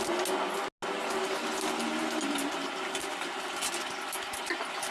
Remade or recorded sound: recorded